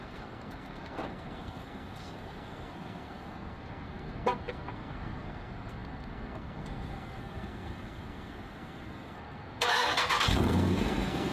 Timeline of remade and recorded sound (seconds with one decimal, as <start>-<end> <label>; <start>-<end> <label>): 0.0-11.3 remade